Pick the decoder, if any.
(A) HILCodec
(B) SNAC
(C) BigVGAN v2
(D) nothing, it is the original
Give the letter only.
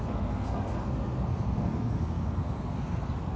B